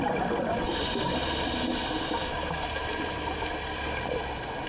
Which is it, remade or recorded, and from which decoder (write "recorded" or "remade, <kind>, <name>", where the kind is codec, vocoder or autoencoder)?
recorded